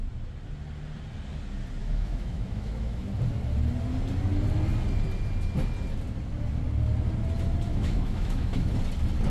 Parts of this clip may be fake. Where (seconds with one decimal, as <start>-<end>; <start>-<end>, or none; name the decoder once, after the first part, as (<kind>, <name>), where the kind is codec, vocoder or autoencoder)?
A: 1.8-3.1 (autoencoder, DAC-VAE); 7.7-8.7